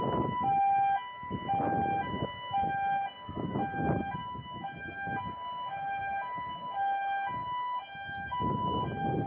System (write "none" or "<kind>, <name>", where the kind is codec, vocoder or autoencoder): none